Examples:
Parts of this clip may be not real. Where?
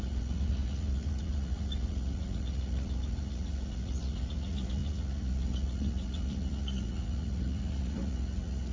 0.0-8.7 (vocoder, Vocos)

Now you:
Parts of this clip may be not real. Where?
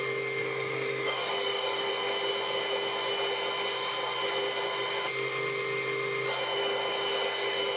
0.4-1.9 (codec, DAC)